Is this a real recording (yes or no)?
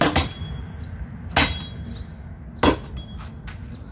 yes